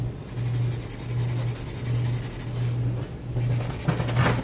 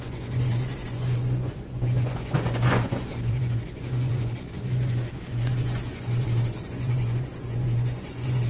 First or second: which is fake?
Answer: second